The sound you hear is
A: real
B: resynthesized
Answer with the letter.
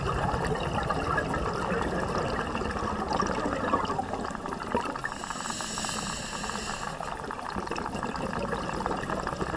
A